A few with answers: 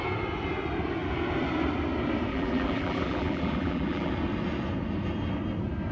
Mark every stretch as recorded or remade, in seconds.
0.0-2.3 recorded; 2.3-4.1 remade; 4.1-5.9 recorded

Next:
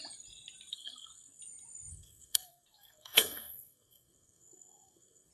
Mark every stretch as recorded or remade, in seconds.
0.0-0.7 recorded; 0.7-1.4 remade; 1.4-1.9 recorded; 1.9-5.3 remade

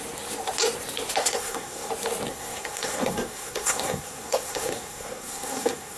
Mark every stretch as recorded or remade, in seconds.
0.0-1.2 recorded; 1.2-1.9 remade; 1.9-2.3 recorded; 2.3-6.0 remade

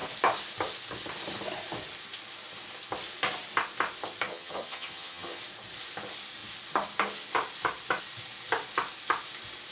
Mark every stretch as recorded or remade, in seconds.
0.0-4.3 recorded; 4.3-5.4 remade; 5.4-9.7 recorded

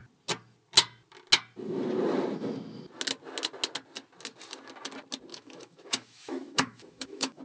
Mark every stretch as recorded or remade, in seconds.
0.0-5.3 recorded; 5.3-7.4 remade